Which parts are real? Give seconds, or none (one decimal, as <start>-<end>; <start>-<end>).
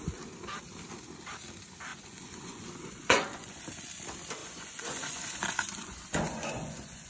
0.0-1.9; 3.6-4.4